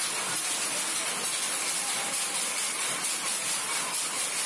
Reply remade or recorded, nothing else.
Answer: recorded